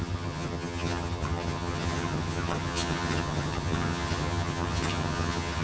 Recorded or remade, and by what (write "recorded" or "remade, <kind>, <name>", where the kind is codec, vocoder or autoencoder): remade, vocoder, HiFi-GAN